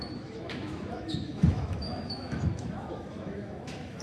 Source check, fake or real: fake